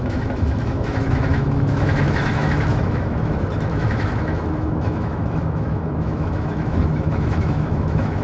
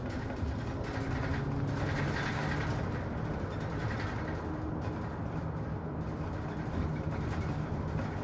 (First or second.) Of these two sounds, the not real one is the first